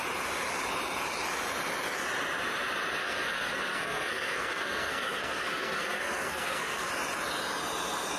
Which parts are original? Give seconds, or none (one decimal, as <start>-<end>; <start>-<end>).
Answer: 0.0-3.0; 6.9-8.2

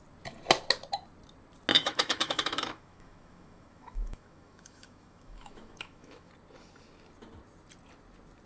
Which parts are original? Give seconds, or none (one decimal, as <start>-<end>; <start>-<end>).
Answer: 0.0-1.7; 6.3-8.5

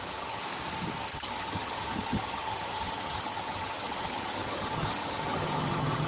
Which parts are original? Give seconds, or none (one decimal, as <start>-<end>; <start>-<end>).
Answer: 0.4-1.0

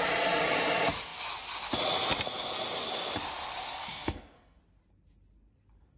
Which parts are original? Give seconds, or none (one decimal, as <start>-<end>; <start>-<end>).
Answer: 0.0-3.7; 4.6-6.0

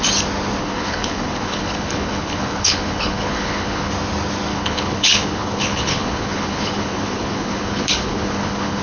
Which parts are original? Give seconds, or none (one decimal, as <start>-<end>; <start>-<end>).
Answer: 0.0-0.6; 3.9-4.5

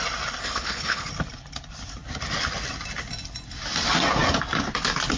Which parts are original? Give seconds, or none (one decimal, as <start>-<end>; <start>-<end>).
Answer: 0.0-0.4; 1.1-5.2

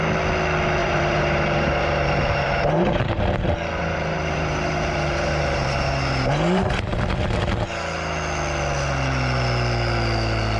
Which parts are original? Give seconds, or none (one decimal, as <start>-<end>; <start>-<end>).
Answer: 0.0-0.8; 3.2-3.8; 7.1-10.6

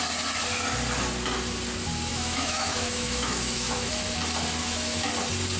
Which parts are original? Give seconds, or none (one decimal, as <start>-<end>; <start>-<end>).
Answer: 0.0-2.1; 3.9-4.6; 5.1-5.6